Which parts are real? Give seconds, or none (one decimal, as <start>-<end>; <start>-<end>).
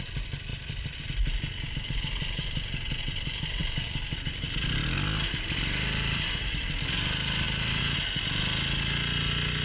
0.0-0.5; 1.0-3.6; 7.8-9.6